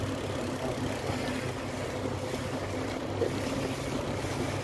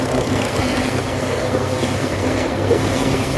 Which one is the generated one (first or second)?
second